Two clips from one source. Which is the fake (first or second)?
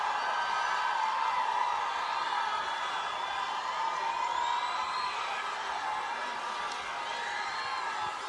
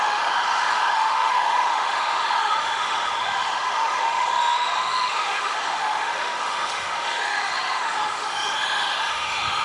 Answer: second